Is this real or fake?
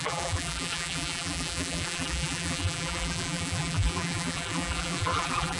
fake